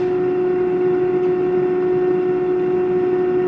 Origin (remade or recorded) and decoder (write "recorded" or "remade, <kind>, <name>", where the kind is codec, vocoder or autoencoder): recorded